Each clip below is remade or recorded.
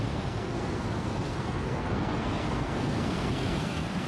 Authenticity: remade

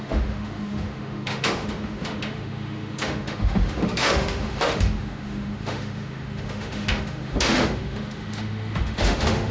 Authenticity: remade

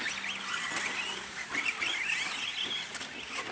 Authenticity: recorded